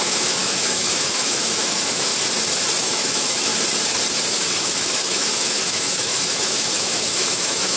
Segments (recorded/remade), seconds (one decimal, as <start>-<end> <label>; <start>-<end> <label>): 0.0-2.1 remade; 2.1-2.8 recorded; 2.8-3.5 remade; 3.5-4.7 recorded; 4.7-7.8 remade